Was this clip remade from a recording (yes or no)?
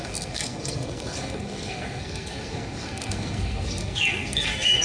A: yes